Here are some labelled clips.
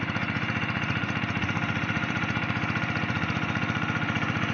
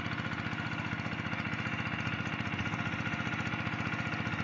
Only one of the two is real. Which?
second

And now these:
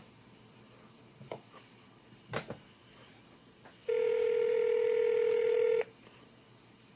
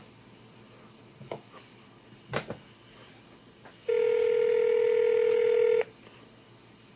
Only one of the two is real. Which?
second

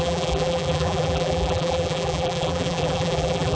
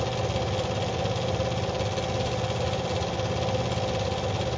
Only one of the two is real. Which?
second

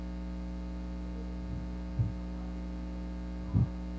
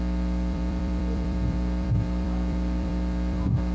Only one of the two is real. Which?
first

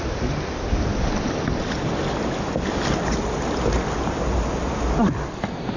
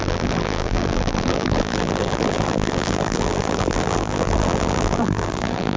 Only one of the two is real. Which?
first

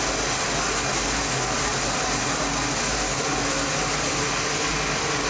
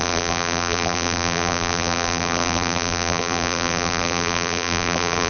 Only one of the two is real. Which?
first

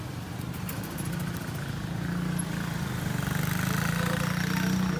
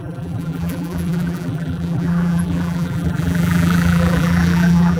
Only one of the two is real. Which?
first